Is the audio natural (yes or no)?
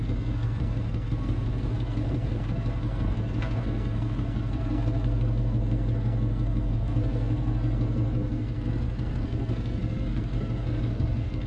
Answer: no